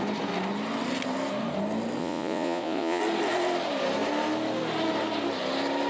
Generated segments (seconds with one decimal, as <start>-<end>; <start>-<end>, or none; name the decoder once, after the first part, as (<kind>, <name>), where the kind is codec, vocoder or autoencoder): 2.0-3.0 (vocoder, Vocos)